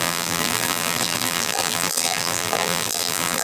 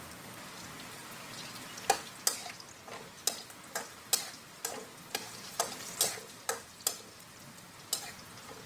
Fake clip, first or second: first